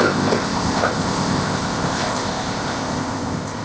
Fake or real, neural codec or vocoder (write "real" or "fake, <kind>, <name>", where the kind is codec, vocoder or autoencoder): fake, codec, ZipCodec